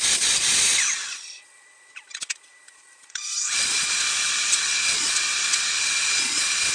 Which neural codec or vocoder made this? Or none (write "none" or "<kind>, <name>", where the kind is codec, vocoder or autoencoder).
vocoder, Vocos